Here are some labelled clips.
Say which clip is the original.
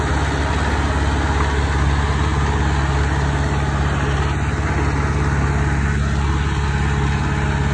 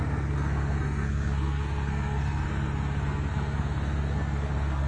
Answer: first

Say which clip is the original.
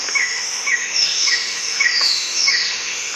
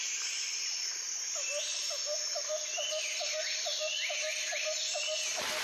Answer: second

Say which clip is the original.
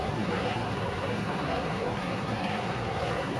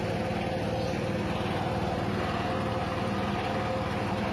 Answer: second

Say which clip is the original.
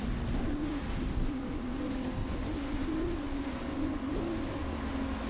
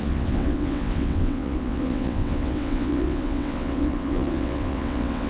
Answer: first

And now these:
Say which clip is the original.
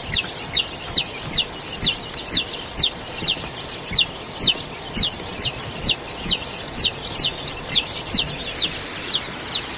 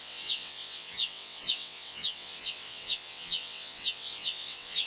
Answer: first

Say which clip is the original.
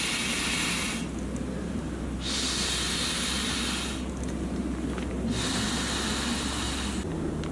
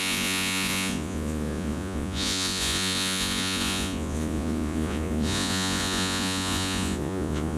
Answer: first